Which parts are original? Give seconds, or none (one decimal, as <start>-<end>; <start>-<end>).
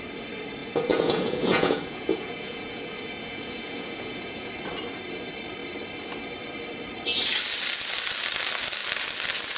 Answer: 0.0-0.6; 4.5-9.6